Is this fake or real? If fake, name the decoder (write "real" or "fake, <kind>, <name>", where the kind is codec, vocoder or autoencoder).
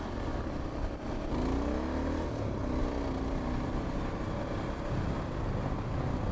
real